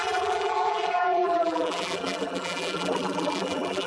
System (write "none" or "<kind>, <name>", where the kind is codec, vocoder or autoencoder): vocoder, BigVGAN v2